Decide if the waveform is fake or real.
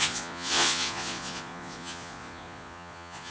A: fake